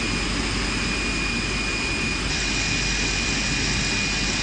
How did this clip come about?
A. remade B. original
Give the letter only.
B